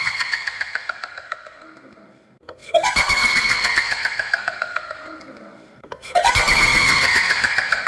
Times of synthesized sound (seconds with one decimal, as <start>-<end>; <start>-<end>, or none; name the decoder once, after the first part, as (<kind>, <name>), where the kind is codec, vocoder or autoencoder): 0.0-7.9 (codec, SNAC)